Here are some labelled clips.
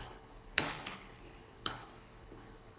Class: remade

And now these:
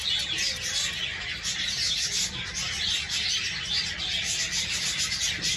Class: recorded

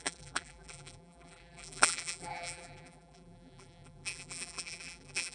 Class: remade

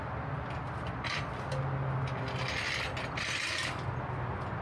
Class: recorded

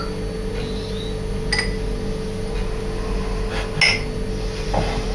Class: recorded